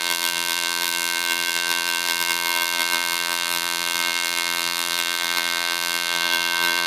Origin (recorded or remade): remade